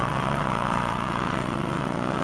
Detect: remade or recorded remade